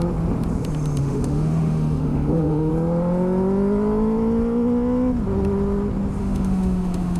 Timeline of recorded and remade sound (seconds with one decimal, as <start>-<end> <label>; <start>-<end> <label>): 0.0-1.0 recorded; 1.0-2.7 remade; 2.7-6.2 recorded; 6.2-7.2 remade